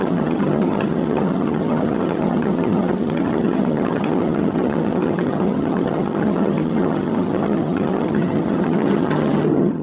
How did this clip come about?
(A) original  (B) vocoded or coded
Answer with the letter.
B